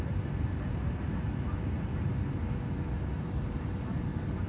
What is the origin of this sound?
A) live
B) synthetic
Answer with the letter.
A